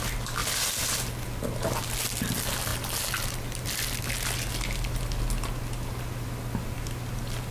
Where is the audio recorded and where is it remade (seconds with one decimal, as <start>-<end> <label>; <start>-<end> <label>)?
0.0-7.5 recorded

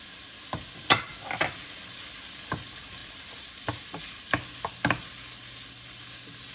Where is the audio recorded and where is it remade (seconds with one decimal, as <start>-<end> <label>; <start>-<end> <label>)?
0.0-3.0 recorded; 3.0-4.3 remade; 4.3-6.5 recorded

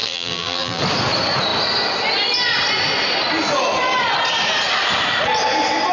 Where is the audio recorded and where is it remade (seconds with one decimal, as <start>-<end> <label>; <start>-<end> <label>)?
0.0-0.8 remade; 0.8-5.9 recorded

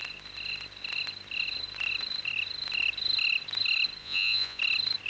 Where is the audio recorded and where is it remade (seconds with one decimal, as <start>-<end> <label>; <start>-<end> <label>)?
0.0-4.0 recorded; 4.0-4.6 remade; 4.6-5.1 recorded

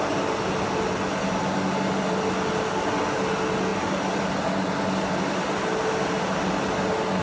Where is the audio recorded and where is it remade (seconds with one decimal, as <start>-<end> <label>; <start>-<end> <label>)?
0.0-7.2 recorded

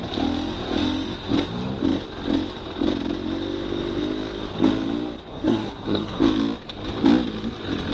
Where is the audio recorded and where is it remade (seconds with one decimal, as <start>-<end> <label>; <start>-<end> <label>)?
0.0-5.3 recorded; 5.3-6.2 remade; 6.2-7.9 recorded